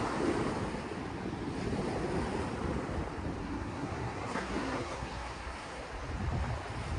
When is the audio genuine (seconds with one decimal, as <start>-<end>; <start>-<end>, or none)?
0.0-3.4; 5.8-7.0